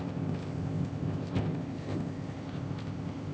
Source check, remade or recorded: remade